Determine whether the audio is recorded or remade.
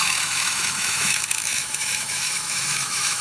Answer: remade